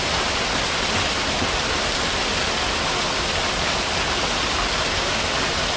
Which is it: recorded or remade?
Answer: recorded